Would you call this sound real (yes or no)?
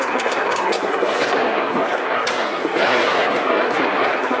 no